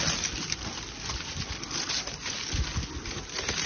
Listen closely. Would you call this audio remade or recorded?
recorded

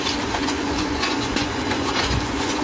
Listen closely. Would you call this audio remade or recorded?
remade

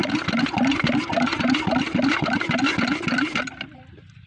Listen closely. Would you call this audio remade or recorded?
recorded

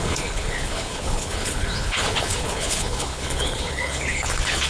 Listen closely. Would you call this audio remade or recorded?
remade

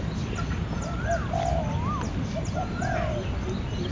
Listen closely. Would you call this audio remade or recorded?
recorded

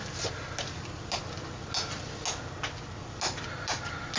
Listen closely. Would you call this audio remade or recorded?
recorded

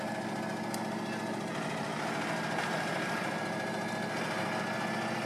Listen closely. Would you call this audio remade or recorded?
recorded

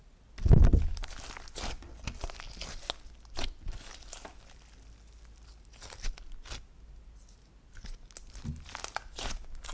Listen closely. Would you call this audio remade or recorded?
recorded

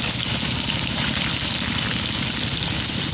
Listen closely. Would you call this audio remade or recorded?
recorded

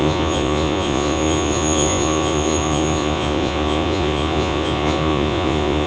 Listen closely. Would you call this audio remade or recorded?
remade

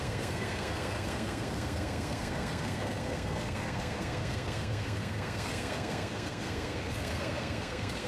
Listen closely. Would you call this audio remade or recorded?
remade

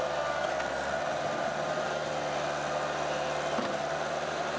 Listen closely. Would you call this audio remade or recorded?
recorded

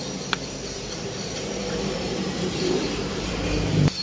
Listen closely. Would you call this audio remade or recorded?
remade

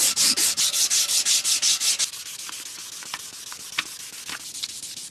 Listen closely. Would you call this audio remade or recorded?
recorded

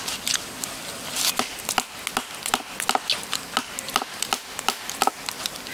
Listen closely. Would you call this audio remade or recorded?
recorded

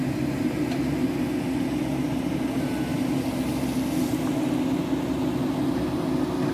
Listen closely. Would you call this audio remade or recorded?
recorded